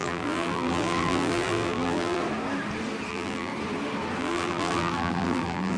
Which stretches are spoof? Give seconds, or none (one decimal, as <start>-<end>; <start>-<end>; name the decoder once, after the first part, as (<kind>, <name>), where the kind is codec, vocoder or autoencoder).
0.0-2.2 (vocoder, BigVGAN v2); 3.1-3.5; 4.2-5.8